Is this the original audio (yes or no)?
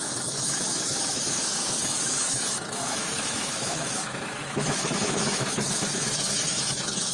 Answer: no